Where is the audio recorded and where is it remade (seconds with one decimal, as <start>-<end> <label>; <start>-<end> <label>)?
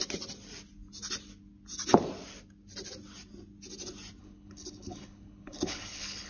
0.0-4.2 recorded; 4.2-6.3 remade